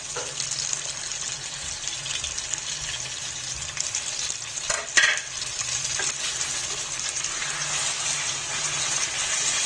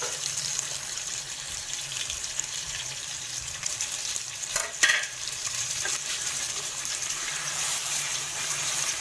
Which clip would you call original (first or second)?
first